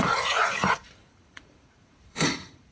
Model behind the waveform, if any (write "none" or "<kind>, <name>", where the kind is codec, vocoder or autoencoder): vocoder, Vocos